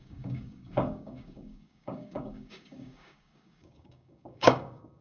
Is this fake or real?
fake